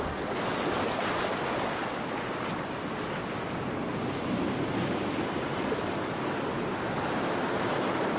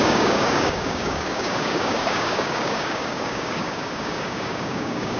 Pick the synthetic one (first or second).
second